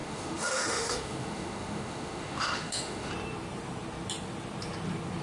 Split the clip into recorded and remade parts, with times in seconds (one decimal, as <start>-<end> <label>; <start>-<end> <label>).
0.0-3.1 remade; 3.1-5.2 recorded

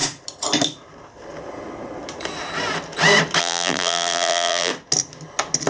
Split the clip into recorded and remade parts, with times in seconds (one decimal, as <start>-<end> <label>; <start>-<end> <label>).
0.0-3.4 recorded; 3.4-4.7 remade; 4.7-5.7 recorded

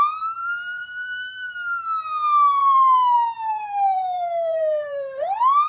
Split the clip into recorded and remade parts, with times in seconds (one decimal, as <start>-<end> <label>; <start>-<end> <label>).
0.0-0.4 recorded; 0.4-1.8 remade; 1.8-2.6 recorded; 2.6-5.7 remade

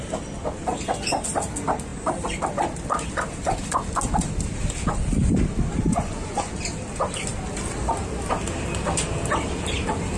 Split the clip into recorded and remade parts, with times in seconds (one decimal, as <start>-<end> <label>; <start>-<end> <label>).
0.0-5.9 recorded; 5.9-6.5 remade; 6.5-10.2 recorded

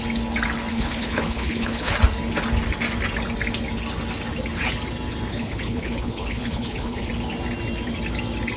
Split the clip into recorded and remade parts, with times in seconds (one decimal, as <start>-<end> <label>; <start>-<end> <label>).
0.0-0.7 recorded; 0.7-1.9 remade; 1.9-5.3 recorded; 5.3-7.1 remade; 7.1-8.6 recorded